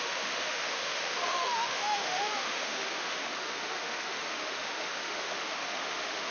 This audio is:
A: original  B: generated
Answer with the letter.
B